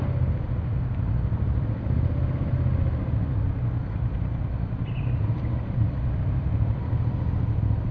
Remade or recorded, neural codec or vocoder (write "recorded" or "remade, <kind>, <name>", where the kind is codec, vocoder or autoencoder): recorded